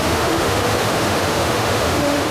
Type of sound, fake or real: fake